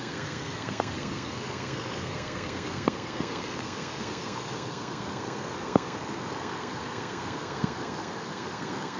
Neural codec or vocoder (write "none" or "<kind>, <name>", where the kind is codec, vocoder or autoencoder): codec, SNAC